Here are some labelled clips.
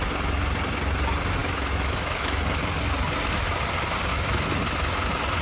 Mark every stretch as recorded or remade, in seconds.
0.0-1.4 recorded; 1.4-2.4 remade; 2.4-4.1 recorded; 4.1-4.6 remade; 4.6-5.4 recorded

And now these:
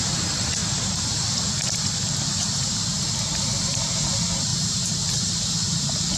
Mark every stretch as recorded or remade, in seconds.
0.0-0.6 recorded; 0.6-1.5 remade; 1.5-4.5 recorded; 4.5-5.4 remade; 5.4-6.2 recorded

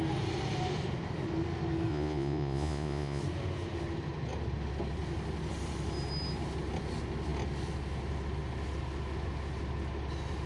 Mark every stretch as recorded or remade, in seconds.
0.0-1.9 recorded; 1.9-3.2 remade; 3.2-10.5 recorded

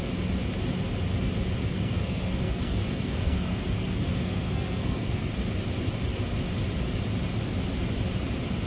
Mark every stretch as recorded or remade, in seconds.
0.0-1.6 recorded; 1.6-5.3 remade; 5.3-8.7 recorded

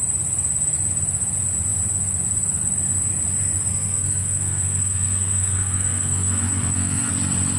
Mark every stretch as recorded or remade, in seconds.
0.0-3.7 recorded; 3.7-7.1 remade; 7.1-7.6 recorded

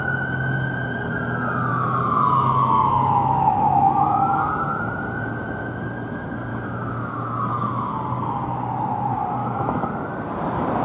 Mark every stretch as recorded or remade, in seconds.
0.0-1.7 recorded; 1.7-4.5 remade; 4.5-6.5 recorded; 6.5-7.9 remade; 7.9-9.4 recorded; 9.4-9.9 remade; 9.9-10.8 recorded